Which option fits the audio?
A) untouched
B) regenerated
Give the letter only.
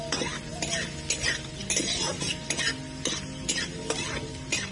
A